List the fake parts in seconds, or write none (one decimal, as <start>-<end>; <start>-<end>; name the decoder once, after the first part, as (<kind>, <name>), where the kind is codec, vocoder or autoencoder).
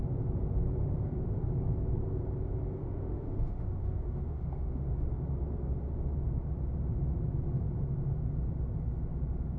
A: 0.8-1.5 (autoencoder, DAC-VAE); 2.8-5.0